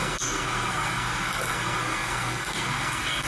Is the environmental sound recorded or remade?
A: remade